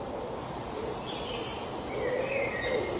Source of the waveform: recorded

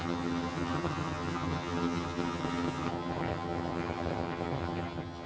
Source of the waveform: remade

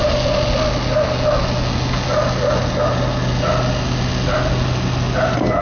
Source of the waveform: recorded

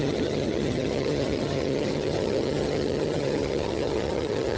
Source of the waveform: remade